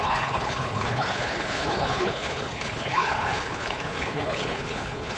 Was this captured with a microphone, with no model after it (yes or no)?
no